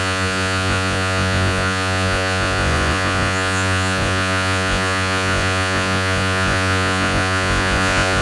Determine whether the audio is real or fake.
fake